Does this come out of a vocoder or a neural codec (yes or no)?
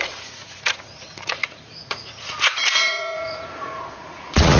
yes